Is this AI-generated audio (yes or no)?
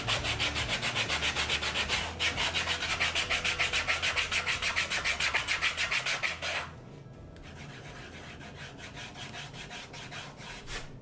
no